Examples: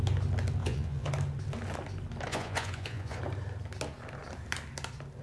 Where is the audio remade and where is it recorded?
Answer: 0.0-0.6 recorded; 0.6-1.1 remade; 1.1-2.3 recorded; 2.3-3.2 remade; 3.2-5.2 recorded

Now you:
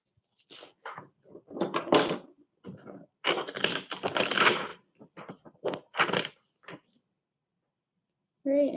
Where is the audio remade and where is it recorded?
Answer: 0.0-4.7 recorded; 4.7-5.3 remade; 5.3-8.8 recorded

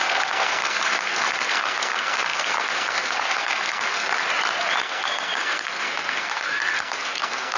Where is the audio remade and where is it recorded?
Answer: 0.0-4.1 remade; 4.1-4.8 recorded; 4.8-7.6 remade

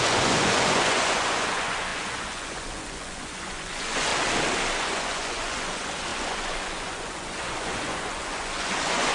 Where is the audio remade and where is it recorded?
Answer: 0.0-4.1 remade; 4.1-4.8 recorded; 4.8-9.1 remade

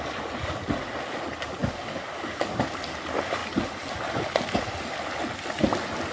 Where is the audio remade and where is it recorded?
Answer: 0.0-1.6 recorded; 1.6-2.6 remade; 2.6-6.1 recorded

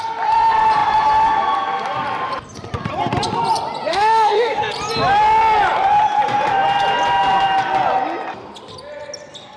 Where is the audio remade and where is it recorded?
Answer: 0.0-3.9 recorded; 3.9-4.6 remade; 4.6-9.6 recorded

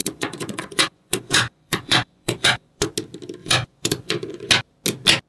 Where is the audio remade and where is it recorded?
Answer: 0.0-2.9 remade; 2.9-3.4 recorded; 3.4-4.5 remade; 4.5-5.3 recorded